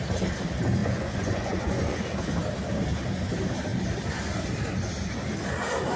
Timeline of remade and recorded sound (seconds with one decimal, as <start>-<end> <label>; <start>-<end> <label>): 0.0-0.8 recorded; 0.8-2.0 remade; 2.0-6.0 recorded